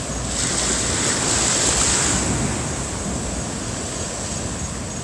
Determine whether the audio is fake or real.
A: real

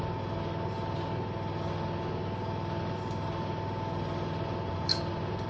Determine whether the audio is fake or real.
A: real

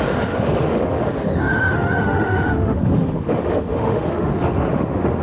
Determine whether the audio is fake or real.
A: fake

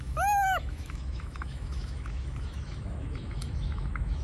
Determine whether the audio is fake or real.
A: fake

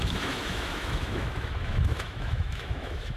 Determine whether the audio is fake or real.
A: fake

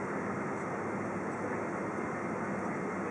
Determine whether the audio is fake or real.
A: real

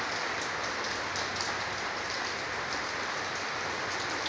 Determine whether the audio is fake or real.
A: real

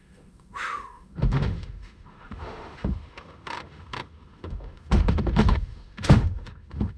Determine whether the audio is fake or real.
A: fake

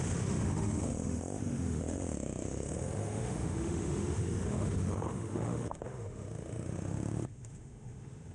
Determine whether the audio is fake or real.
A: fake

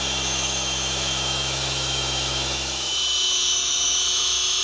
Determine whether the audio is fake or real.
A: fake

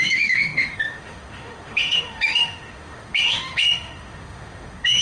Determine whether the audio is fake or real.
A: fake